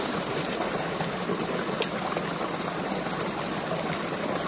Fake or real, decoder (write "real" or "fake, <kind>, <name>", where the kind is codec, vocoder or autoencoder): real